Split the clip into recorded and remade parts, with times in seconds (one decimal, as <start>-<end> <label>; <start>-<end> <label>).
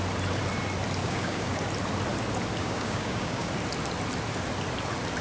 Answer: 0.0-1.0 recorded; 1.0-1.6 remade; 1.6-2.6 recorded; 2.6-3.5 remade; 3.5-5.2 recorded